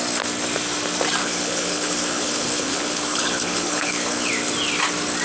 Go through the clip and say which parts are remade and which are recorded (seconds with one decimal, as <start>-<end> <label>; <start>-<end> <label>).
0.0-1.2 recorded; 1.2-4.3 remade; 4.3-5.2 recorded